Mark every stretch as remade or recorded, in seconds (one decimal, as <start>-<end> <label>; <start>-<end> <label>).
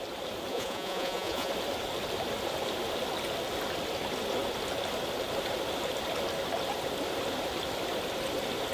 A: 0.0-0.5 recorded; 0.5-1.5 remade; 1.5-8.7 recorded